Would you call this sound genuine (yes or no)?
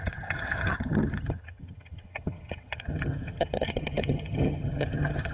no